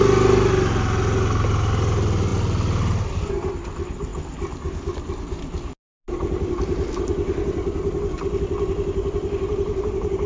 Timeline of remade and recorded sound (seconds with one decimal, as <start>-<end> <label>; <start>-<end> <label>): 0.0-10.3 recorded